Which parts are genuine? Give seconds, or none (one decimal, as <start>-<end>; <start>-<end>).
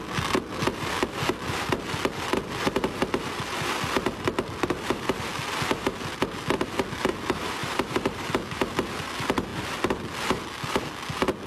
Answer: 0.0-7.6; 8.6-11.5